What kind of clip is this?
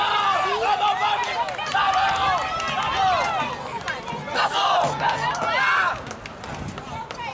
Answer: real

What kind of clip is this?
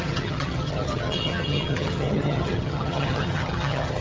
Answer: fake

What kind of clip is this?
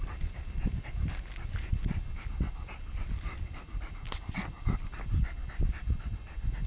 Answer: real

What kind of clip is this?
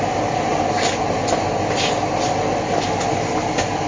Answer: real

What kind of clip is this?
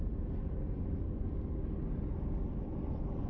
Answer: real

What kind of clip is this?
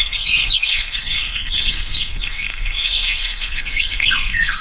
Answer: fake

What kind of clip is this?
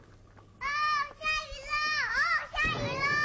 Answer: real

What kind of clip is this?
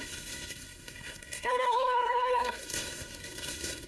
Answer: fake